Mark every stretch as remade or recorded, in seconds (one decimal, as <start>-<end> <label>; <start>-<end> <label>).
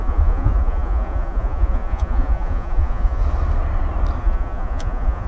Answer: 0.0-3.2 remade; 3.2-4.2 recorded; 4.2-5.3 remade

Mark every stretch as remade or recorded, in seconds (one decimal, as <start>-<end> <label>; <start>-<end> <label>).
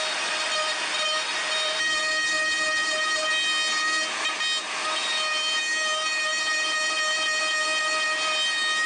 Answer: 0.0-1.4 recorded; 1.4-2.0 remade; 2.0-2.8 recorded; 2.8-3.3 remade; 3.3-5.0 recorded; 5.0-5.6 remade; 5.6-8.9 recorded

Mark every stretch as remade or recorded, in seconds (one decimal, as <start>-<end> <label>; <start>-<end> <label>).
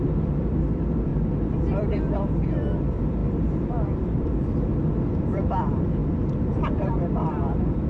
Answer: 0.0-6.0 remade; 6.0-6.8 recorded; 6.8-7.9 remade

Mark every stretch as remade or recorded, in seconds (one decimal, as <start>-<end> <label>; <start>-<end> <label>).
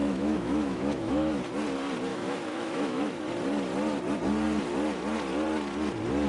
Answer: 0.0-1.4 remade; 1.4-2.1 recorded; 2.1-3.2 remade; 3.2-6.3 recorded